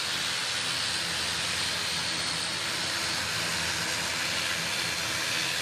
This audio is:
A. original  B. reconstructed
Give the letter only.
A